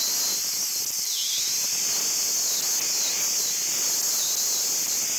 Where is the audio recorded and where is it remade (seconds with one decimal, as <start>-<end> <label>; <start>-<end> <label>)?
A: 0.0-5.2 recorded